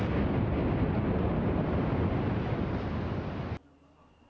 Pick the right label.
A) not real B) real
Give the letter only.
B